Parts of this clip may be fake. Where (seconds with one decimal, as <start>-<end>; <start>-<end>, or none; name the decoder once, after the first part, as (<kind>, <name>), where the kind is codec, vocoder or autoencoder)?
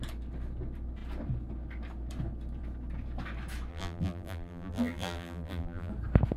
3.7-5.9 (vocoder, BigVGAN v2)